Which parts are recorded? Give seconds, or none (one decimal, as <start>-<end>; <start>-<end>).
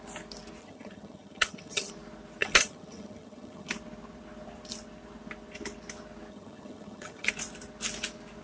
0.0-0.6; 1.9-2.4; 3.7-6.3; 7.3-8.4